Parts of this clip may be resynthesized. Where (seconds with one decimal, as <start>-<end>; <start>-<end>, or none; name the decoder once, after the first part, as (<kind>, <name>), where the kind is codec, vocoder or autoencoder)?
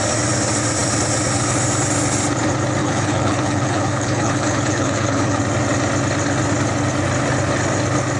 2.8-5.4 (codec, HILCodec)